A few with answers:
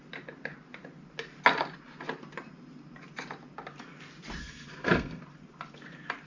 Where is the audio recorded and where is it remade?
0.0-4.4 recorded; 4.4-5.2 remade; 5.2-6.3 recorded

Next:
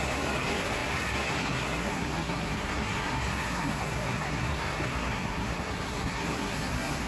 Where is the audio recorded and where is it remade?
0.0-7.1 remade

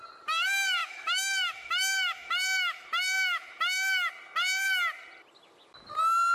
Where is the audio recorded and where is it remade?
0.0-0.8 recorded; 0.8-4.1 remade; 4.1-6.3 recorded

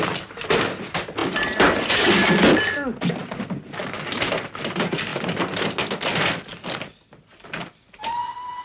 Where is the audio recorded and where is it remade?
0.0-8.6 recorded